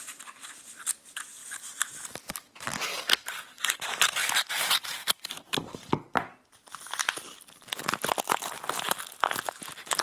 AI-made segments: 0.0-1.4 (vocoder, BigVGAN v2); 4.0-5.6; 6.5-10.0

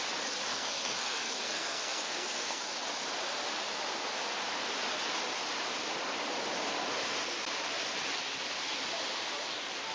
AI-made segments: 0.5-2.6 (codec, SNAC)